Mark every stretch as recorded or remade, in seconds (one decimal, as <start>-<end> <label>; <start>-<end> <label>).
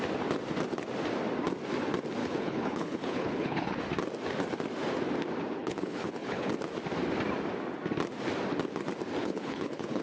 0.0-2.2 recorded; 2.2-3.8 remade; 3.8-5.6 recorded; 5.6-6.5 remade; 6.5-9.2 recorded; 9.2-10.0 remade